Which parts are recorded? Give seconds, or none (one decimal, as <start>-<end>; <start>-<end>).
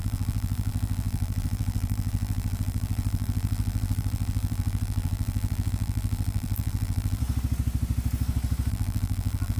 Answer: 7.2-8.7